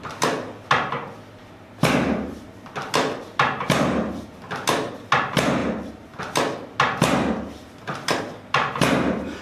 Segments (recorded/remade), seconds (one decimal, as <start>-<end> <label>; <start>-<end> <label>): 0.0-9.4 recorded